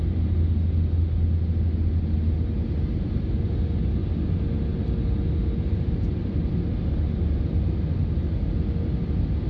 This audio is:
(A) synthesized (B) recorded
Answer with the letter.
B